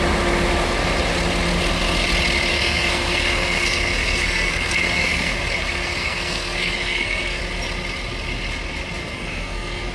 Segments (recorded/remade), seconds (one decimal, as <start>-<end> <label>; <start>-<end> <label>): 0.0-2.5 recorded; 2.5-7.4 remade; 7.4-9.0 recorded; 9.0-9.9 remade